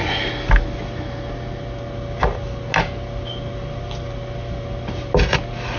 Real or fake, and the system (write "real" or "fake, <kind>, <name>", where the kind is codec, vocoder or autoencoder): real